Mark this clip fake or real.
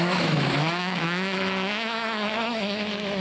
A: fake